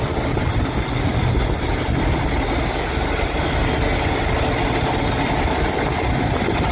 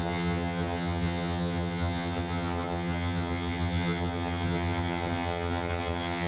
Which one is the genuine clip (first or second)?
first